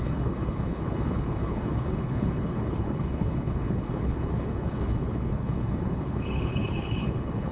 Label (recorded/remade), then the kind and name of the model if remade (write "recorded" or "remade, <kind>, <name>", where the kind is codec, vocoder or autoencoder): remade, codec, HILCodec